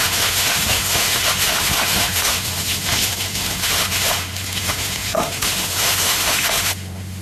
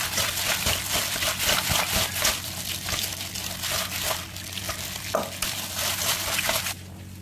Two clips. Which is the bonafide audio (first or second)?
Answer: second